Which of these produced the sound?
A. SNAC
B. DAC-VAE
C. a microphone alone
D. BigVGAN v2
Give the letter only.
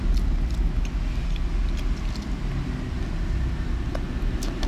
C